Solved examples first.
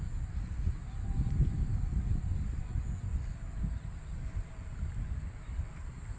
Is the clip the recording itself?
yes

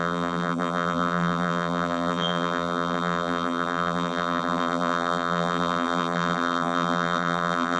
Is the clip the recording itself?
no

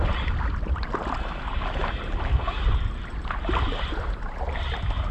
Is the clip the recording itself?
yes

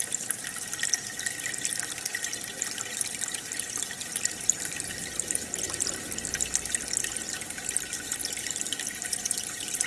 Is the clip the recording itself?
yes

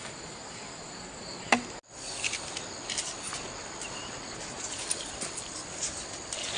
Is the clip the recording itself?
yes